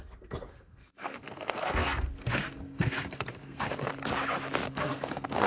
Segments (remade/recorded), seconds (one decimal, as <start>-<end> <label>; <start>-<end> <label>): 0.0-3.9 remade; 3.9-4.7 recorded; 4.7-5.5 remade